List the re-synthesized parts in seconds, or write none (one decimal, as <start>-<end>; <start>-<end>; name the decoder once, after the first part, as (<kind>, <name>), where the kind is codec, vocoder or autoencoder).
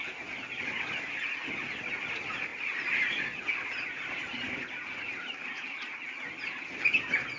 none